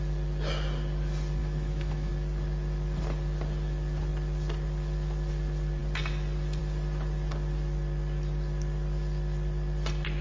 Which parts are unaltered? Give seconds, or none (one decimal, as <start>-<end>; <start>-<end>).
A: 0.0-1.4; 2.1-10.2